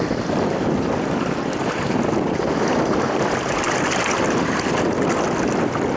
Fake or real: real